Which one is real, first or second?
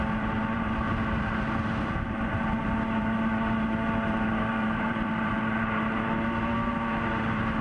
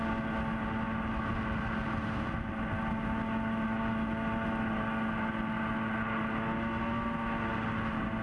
second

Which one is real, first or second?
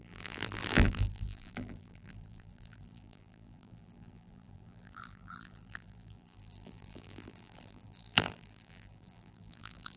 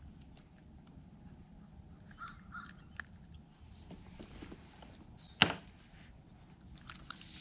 second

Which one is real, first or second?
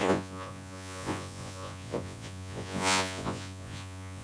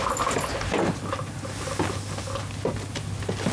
second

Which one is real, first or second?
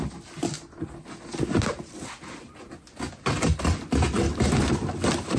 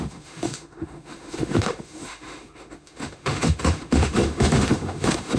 first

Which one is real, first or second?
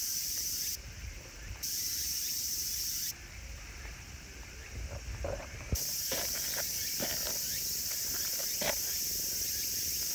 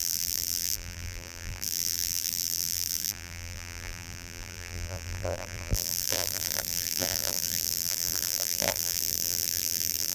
first